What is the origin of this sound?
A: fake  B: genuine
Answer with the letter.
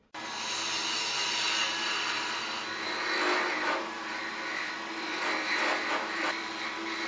B